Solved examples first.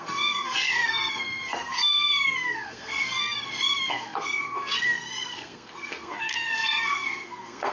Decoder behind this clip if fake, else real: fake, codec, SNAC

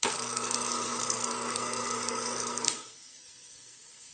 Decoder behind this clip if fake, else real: fake, codec, SNAC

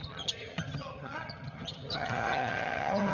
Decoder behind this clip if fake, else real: fake, vocoder, HiFi-GAN